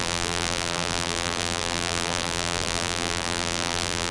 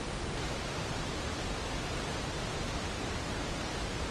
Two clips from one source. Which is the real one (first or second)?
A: second